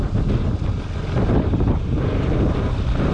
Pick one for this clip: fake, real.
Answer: real